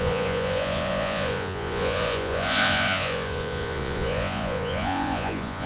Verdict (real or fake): fake